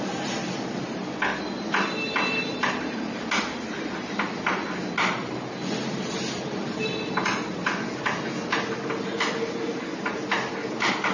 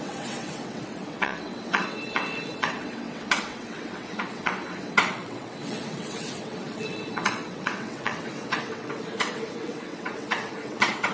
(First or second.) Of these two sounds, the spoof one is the second